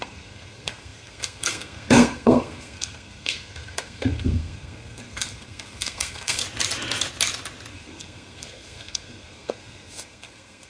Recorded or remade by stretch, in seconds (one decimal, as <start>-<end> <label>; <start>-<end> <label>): 0.0-6.4 remade; 6.4-7.7 recorded; 7.7-10.7 remade